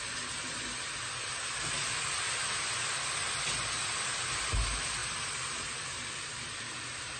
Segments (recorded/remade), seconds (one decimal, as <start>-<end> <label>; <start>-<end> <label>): 0.0-5.0 recorded; 5.0-7.2 remade